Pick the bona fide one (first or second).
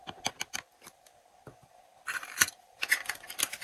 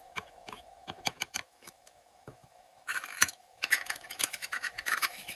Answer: first